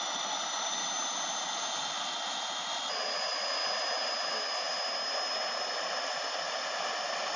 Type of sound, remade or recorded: recorded